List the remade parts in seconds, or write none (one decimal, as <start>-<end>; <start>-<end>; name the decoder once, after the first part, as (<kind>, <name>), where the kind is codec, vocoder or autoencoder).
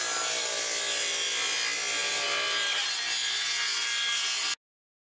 none